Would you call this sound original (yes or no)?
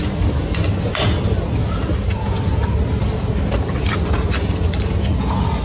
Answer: yes